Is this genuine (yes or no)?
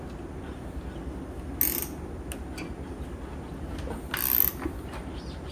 yes